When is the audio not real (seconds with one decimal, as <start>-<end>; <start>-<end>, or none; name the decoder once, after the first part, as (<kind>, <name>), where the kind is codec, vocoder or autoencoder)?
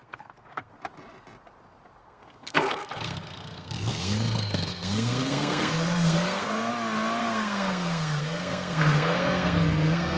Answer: 0.0-0.7 (codec, SNAC); 2.0-6.7; 7.2-10.2